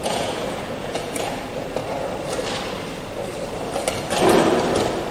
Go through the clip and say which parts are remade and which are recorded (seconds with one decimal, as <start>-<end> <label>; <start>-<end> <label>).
0.0-1.8 remade; 1.8-5.1 recorded